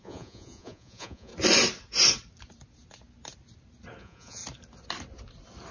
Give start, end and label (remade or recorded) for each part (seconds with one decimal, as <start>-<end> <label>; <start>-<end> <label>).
0.0-1.3 remade; 1.3-4.0 recorded; 4.0-4.4 remade; 4.4-5.7 recorded